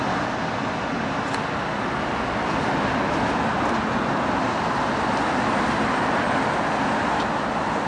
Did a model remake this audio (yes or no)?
no